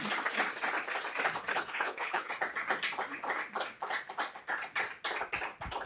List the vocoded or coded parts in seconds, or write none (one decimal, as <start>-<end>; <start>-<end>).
1.5-2.3